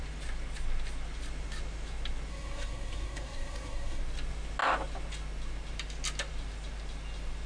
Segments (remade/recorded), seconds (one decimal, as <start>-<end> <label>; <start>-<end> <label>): 0.0-2.3 recorded; 2.3-4.0 remade; 4.0-7.5 recorded